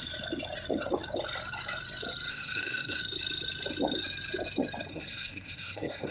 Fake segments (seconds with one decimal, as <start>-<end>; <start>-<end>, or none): 2.3-3.0; 4.9-6.1